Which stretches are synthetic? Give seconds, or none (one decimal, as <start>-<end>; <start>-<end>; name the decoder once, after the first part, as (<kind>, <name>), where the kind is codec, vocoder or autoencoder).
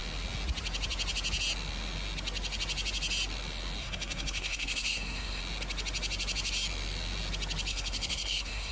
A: 3.8-5.4 (codec, SNAC); 7.7-8.7